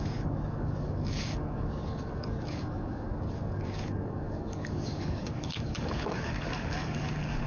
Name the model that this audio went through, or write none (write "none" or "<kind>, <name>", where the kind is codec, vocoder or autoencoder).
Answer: codec, DAC